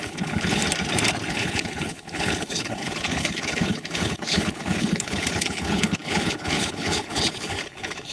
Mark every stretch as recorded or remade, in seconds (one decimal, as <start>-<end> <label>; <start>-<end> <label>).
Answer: 0.0-0.6 remade; 0.6-1.3 recorded; 1.3-8.1 remade